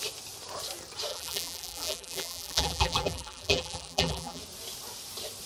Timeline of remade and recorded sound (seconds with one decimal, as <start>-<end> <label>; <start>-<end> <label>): 0.0-1.1 recorded; 1.1-4.4 remade; 4.4-5.5 recorded